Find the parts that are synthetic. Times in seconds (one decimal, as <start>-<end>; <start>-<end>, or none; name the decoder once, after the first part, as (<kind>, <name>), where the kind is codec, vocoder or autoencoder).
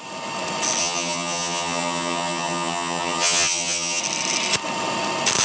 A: 0.8-4.0 (vocoder, HiFi-GAN)